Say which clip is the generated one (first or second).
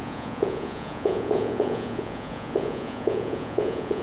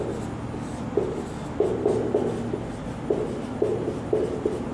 first